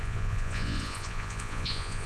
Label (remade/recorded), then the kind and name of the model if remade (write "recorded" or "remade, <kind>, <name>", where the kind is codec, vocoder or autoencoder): remade, vocoder, Vocos